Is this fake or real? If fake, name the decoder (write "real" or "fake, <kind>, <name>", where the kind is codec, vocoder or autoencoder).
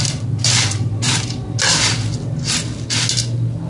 real